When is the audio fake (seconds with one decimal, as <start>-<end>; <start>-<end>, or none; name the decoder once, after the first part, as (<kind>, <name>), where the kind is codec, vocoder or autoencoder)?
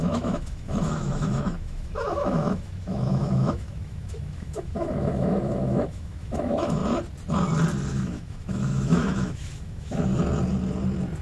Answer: 0.0-6.8 (autoencoder, DAC-VAE); 7.9-10.1